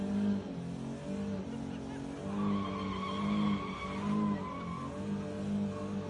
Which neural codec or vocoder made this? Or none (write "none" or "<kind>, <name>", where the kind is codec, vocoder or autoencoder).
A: none